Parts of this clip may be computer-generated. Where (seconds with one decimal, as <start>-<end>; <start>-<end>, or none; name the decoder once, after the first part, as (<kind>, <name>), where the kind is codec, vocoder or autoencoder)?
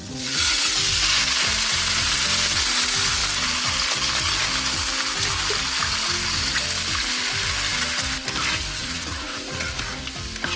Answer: 0.0-0.7 (vocoder, Vocos); 8.8-10.0